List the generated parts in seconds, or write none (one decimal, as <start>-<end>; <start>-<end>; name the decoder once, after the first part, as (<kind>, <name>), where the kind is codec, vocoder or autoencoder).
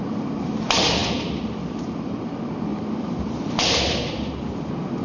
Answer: 1.0-2.3 (vocoder, BigVGAN v2); 2.7-4.3